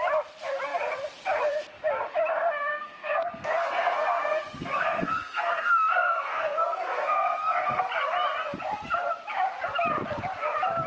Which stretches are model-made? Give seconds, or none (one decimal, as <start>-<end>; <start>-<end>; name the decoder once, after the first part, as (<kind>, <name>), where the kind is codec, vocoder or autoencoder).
2.7-7.8 (codec, SNAC)